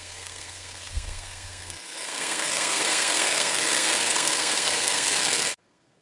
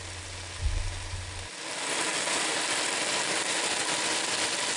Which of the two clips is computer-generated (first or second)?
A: first